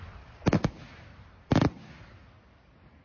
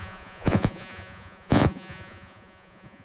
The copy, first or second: second